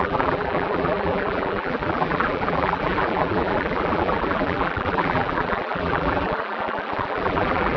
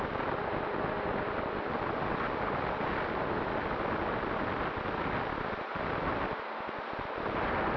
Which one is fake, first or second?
first